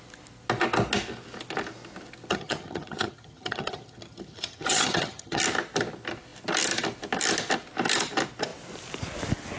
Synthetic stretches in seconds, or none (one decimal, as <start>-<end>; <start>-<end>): 2.3-5.4